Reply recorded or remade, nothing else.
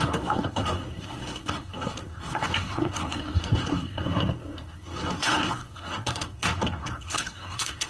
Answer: remade